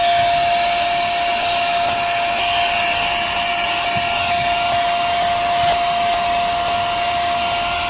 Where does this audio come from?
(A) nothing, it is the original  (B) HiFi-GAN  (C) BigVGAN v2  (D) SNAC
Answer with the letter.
A